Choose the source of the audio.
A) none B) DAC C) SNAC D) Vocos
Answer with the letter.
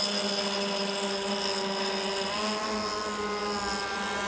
A